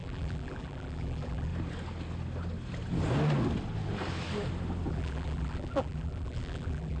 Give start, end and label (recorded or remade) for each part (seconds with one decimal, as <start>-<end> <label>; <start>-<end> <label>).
0.0-1.5 remade; 1.5-4.9 recorded; 4.9-7.0 remade